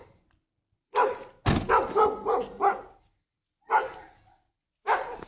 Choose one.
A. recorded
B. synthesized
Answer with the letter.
A